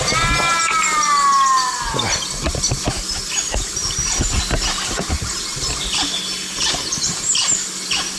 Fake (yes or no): no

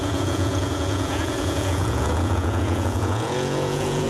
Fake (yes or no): yes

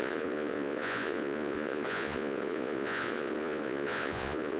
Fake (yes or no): yes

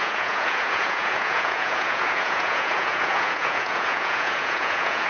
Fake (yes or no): yes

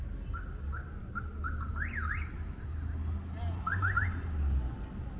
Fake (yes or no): no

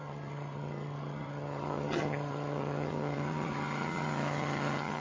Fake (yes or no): yes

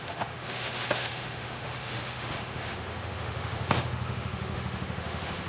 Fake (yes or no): yes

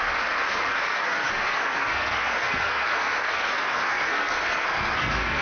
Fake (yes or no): yes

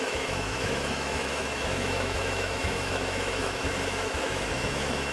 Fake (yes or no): yes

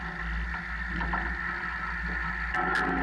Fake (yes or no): no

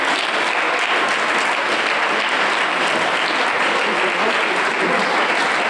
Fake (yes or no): no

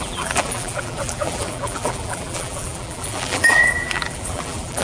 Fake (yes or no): yes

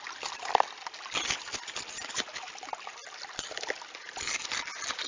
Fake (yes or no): no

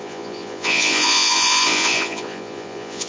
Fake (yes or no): yes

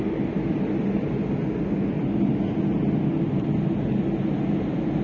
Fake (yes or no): no